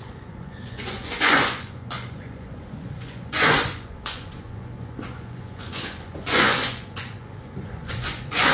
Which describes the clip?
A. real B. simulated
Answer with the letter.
B